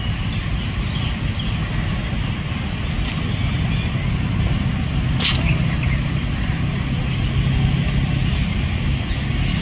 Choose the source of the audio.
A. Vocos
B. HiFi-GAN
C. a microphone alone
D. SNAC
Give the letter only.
C